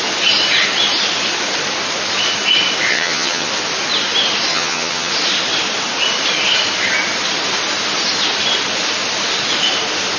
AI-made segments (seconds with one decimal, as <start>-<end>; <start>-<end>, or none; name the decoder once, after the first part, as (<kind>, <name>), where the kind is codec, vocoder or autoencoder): 2.9-3.5 (vocoder, HiFi-GAN); 4.5-5.1